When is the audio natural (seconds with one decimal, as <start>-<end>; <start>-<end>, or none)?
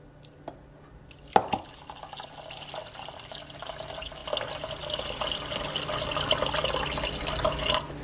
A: 0.0-8.0